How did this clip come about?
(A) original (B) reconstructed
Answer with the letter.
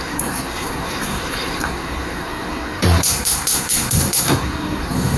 B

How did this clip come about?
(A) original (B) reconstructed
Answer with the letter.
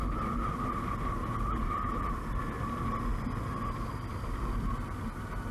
A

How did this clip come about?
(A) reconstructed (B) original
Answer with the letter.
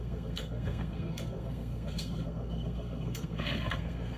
A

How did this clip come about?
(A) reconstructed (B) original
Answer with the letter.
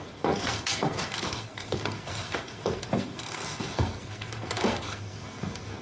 A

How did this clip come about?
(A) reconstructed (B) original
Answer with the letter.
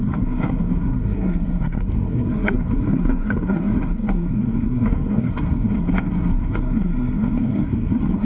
A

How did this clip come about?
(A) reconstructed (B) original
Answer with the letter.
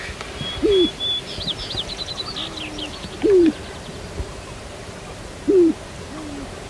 B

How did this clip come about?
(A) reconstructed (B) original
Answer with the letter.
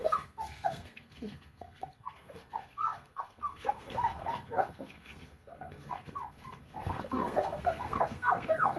A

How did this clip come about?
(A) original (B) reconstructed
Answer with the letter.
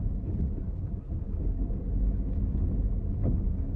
A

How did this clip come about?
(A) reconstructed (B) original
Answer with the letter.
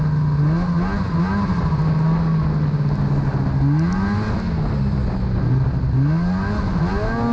B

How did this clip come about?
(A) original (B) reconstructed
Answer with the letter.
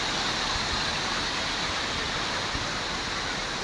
A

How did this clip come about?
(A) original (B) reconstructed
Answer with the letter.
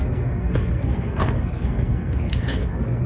B